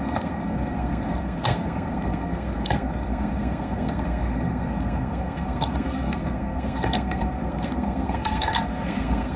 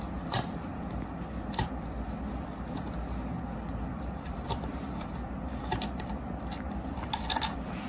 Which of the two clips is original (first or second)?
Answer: second